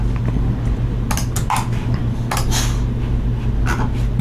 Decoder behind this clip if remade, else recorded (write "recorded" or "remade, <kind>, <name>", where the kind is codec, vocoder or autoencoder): recorded